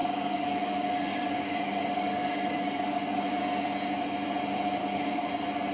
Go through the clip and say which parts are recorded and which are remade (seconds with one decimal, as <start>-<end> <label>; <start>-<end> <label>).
0.0-3.4 remade; 3.4-4.8 recorded; 4.8-5.3 remade; 5.3-5.7 recorded